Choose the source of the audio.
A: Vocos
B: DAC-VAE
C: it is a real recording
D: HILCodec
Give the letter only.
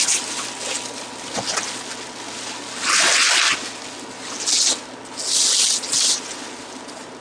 C